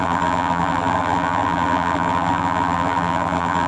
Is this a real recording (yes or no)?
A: no